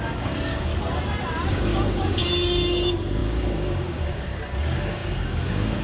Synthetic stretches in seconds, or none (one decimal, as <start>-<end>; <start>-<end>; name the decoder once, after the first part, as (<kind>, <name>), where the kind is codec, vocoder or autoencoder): 0.0-0.7 (codec, DAC); 1.5-5.8